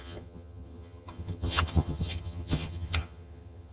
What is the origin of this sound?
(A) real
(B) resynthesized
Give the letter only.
B